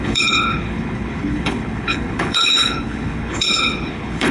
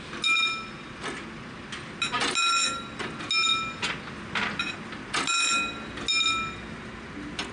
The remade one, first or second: first